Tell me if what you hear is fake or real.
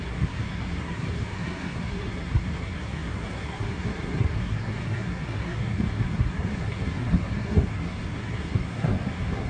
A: fake